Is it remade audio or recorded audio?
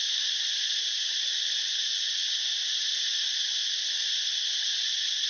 recorded